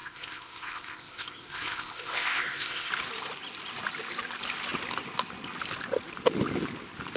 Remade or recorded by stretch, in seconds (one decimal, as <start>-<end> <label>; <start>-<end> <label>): 0.0-2.9 remade; 2.9-7.2 recorded